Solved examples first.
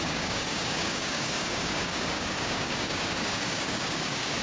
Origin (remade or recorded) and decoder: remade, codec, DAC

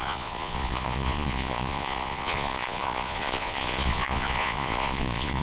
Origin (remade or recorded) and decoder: remade, vocoder, Vocos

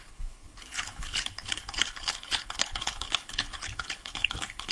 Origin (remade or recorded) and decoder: remade, codec, HILCodec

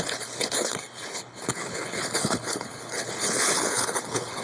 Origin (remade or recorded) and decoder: remade, codec, HILCodec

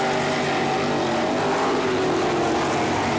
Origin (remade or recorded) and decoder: recorded